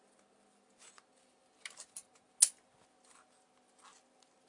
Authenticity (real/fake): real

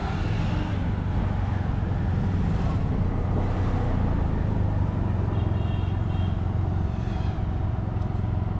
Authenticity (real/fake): real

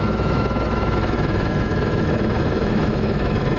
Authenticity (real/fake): fake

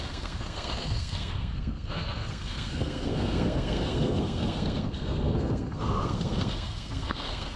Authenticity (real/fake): fake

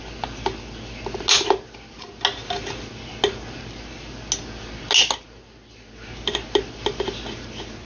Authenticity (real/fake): real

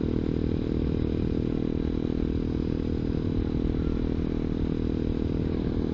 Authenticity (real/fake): real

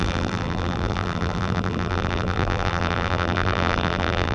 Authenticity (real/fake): fake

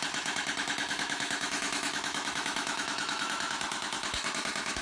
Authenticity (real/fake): fake